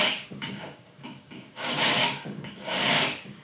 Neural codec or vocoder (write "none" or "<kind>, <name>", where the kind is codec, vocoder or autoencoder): codec, DAC